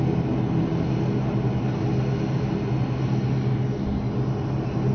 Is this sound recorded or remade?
recorded